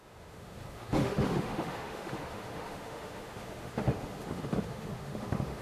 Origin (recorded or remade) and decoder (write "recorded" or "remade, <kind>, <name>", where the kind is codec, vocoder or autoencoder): remade, autoencoder, DAC-VAE